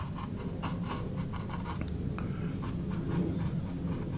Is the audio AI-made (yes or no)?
no